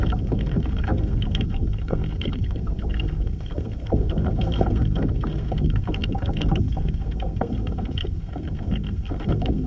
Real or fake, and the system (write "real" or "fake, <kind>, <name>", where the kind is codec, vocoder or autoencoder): fake, codec, SNAC